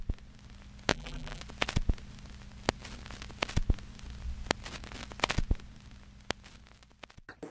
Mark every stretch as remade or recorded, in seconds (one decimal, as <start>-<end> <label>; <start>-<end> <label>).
0.0-0.9 recorded; 0.9-1.4 remade; 1.4-7.5 recorded